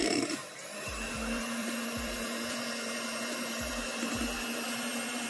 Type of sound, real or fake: fake